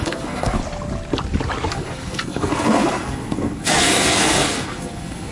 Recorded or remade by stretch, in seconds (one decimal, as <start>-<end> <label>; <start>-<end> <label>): 0.0-0.6 remade; 0.6-1.7 recorded; 1.7-5.3 remade